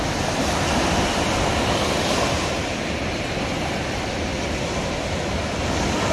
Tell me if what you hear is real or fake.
real